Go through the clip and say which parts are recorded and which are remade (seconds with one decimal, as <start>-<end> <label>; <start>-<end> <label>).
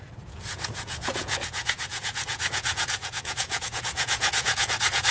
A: 0.0-5.1 remade